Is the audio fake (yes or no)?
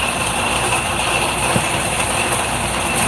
yes